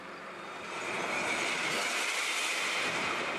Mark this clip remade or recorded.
recorded